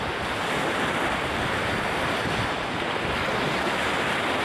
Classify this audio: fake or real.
real